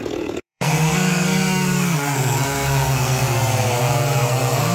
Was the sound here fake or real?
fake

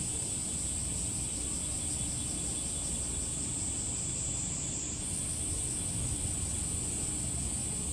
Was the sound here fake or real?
real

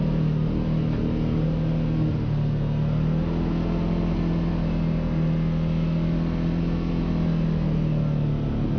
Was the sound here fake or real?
real